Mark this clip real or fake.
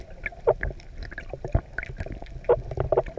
real